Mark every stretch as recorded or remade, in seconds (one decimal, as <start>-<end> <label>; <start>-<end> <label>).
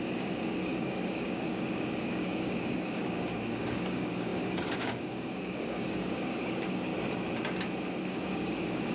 0.0-6.9 remade; 6.9-8.0 recorded; 8.0-8.9 remade